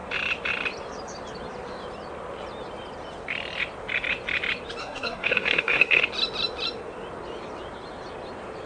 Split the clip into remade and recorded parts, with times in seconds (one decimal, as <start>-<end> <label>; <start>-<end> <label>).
0.0-4.8 recorded; 4.8-6.0 remade; 6.0-8.7 recorded